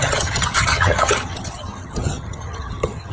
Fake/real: fake